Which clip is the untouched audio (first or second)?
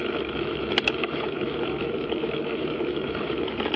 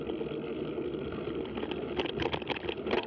second